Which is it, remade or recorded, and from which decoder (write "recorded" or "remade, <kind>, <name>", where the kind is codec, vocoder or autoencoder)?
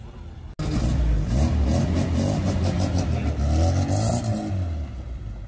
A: recorded